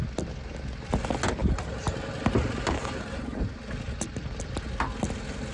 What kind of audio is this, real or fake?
real